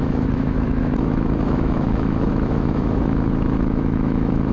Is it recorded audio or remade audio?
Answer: remade